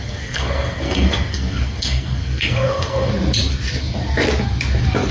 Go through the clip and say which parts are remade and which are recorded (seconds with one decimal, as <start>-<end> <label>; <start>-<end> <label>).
0.0-3.1 remade; 3.1-5.1 recorded